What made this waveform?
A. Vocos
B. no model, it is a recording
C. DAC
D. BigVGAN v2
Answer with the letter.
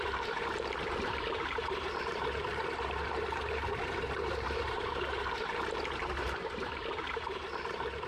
D